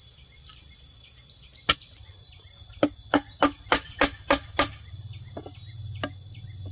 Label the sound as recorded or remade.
recorded